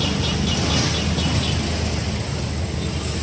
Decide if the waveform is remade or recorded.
recorded